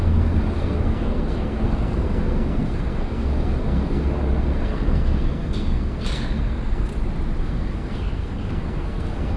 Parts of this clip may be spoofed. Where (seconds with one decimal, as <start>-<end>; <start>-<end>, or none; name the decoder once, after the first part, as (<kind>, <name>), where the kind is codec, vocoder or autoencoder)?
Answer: 0.0-6.9 (codec, SNAC); 7.4-9.4